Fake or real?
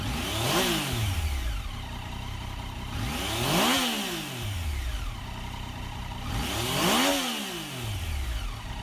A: real